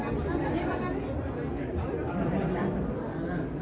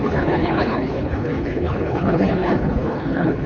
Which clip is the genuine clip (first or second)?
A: first